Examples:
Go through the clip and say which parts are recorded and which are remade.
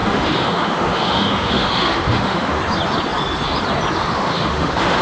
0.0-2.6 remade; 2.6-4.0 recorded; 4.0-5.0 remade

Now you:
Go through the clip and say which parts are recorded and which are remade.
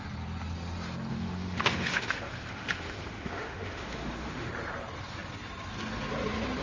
0.0-1.1 recorded; 1.1-4.5 remade; 4.5-6.6 recorded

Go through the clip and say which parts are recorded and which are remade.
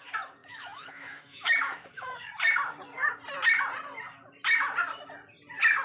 0.0-0.4 recorded; 0.4-2.3 remade; 2.3-5.8 recorded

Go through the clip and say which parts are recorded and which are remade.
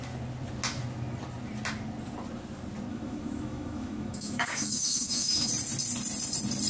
0.0-2.9 recorded; 2.9-5.5 remade; 5.5-6.7 recorded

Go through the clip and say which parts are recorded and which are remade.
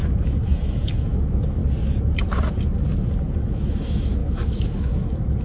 0.0-1.6 remade; 1.6-3.2 recorded; 3.2-5.4 remade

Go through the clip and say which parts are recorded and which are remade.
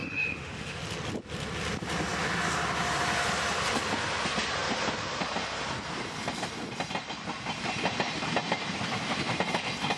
0.0-0.8 remade; 0.8-10.0 recorded